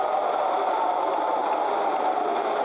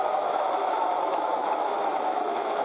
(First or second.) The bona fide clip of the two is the first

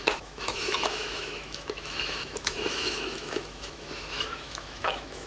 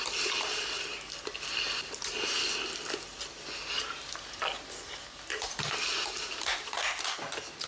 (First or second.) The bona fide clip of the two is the second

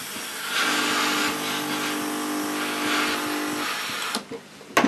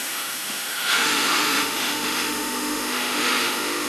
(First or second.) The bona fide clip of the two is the first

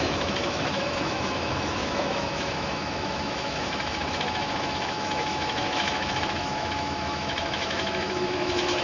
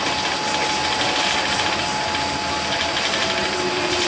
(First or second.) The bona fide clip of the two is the second